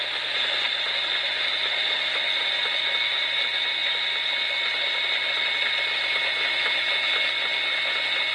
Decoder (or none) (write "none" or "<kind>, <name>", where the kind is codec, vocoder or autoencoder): none